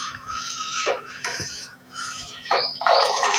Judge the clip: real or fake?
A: fake